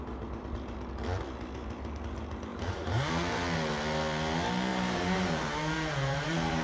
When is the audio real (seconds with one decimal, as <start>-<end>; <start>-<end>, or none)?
0.0-2.5; 3.1-4.7

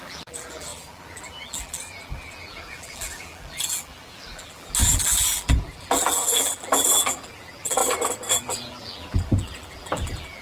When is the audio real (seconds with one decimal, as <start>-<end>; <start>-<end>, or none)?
7.8-8.3

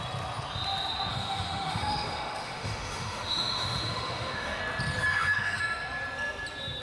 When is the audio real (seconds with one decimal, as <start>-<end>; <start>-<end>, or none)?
0.0-1.1; 4.6-5.1; 5.6-6.8

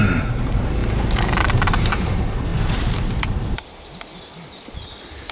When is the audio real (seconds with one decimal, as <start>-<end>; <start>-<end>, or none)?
0.8-1.7

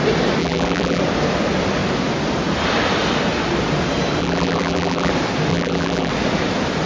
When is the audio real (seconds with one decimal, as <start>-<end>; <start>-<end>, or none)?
0.0-0.4; 1.0-4.2; 5.1-5.5; 6.1-6.9

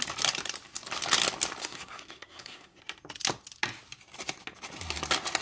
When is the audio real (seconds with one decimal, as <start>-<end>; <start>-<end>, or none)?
0.0-1.6; 2.8-5.4

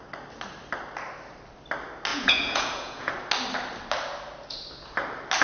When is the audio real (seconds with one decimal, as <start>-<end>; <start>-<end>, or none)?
0.0-2.1; 3.1-5.4